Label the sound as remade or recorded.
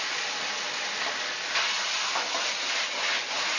recorded